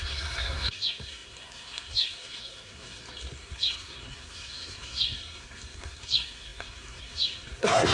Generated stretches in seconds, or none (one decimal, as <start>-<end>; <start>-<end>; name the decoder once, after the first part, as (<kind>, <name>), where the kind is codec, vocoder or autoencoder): 0.0-7.9 (codec, SNAC)